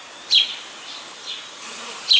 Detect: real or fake real